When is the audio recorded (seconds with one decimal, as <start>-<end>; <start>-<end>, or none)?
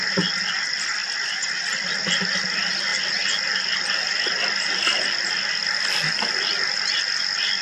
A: 0.0-7.6